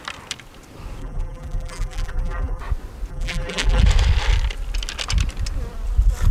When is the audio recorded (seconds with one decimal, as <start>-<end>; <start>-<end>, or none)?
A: 0.0-1.0; 2.6-3.1; 3.8-6.3

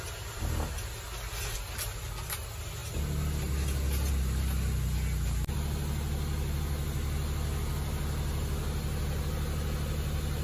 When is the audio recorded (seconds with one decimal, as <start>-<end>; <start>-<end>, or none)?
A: 0.0-10.4

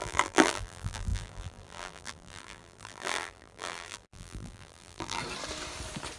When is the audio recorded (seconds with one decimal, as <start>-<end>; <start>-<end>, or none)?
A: 5.2-6.2

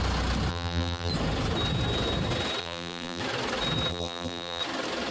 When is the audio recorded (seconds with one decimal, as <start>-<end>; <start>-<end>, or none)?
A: 0.0-0.5; 1.1-2.6; 3.2-3.9; 4.6-5.1